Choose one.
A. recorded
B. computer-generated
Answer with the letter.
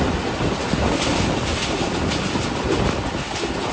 A